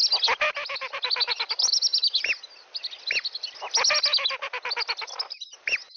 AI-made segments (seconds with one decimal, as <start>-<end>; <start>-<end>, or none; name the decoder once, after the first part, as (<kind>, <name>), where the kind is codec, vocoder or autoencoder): none